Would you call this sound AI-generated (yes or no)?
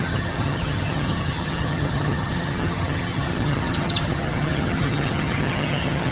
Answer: yes